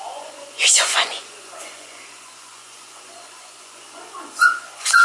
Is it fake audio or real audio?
fake